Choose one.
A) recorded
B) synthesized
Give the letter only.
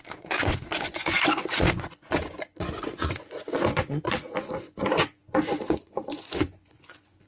B